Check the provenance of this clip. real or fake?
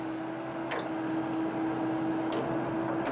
real